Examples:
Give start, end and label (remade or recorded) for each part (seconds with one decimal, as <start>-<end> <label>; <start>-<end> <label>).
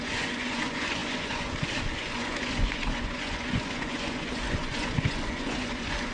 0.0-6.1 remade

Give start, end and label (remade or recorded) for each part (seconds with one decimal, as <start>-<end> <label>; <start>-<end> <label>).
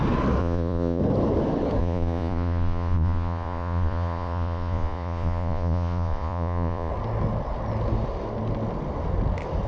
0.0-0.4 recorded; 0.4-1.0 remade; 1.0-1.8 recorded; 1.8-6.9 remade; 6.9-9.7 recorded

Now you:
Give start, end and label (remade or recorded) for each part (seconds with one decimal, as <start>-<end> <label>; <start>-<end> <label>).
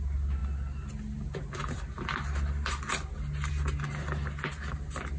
0.0-5.2 recorded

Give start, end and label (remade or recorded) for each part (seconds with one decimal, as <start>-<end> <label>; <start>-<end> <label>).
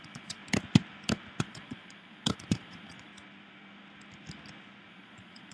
0.0-0.4 remade; 0.4-1.4 recorded; 1.4-3.1 remade; 3.1-4.9 recorded; 4.9-5.5 remade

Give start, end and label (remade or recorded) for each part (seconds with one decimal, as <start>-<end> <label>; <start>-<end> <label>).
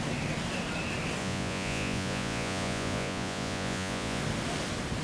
0.0-1.2 recorded; 1.2-4.2 remade; 4.2-5.0 recorded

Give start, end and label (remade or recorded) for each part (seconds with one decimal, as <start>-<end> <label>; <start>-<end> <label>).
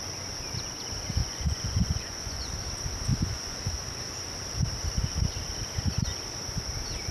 0.0-1.2 recorded; 1.2-2.5 remade; 2.5-3.1 recorded; 3.1-3.6 remade; 3.6-7.1 recorded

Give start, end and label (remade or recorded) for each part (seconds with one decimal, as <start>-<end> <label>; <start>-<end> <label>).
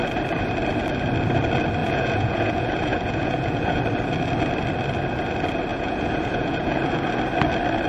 0.0-1.8 recorded; 1.8-3.8 remade; 3.8-5.7 recorded; 5.7-7.1 remade; 7.1-7.9 recorded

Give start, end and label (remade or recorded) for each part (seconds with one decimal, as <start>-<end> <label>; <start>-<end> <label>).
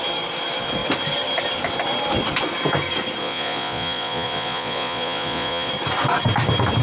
0.0-3.2 recorded; 3.2-5.7 remade; 5.7-6.8 recorded